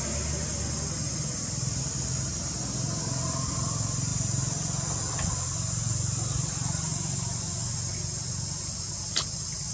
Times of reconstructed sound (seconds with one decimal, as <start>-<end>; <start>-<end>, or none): none